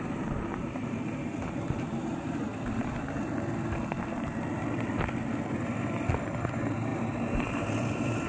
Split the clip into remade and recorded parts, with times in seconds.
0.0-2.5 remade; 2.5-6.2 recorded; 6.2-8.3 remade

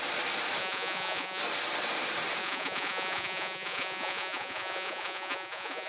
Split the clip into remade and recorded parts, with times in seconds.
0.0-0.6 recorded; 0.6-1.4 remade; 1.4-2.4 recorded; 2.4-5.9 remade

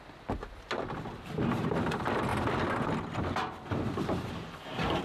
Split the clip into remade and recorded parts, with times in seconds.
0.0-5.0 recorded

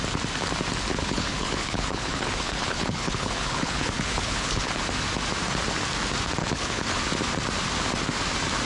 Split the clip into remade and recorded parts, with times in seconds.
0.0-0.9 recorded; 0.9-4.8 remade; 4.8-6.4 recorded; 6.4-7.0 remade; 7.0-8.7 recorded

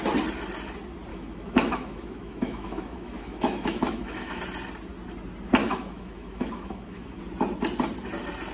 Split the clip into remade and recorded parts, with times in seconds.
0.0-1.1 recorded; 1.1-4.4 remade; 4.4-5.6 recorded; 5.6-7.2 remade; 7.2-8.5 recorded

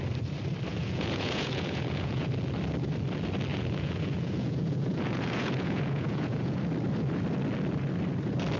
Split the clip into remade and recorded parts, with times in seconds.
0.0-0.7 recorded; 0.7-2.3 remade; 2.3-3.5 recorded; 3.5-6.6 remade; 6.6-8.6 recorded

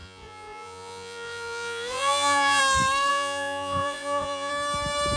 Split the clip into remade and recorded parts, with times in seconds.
0.0-2.6 remade; 2.6-3.1 recorded; 3.1-4.5 remade; 4.5-5.2 recorded